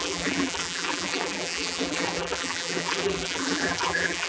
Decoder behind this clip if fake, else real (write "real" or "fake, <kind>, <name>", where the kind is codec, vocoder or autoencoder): fake, vocoder, BigVGAN v2